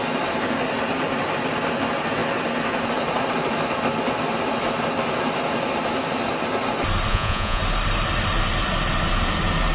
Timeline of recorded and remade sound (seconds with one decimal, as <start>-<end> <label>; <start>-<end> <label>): 0.0-7.1 recorded; 7.1-7.6 remade; 7.6-9.7 recorded